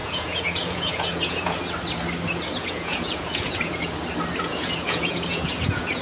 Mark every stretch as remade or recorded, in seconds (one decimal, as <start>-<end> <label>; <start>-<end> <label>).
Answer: 0.0-1.6 remade; 1.6-2.6 recorded; 2.6-3.9 remade; 3.9-4.5 recorded; 4.5-6.0 remade